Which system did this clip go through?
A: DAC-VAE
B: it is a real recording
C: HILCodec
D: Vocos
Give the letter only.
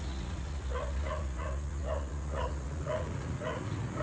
D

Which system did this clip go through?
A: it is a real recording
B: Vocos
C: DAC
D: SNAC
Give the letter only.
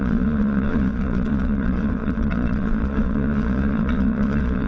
B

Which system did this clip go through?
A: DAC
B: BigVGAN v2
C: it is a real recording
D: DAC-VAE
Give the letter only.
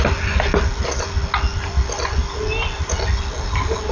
C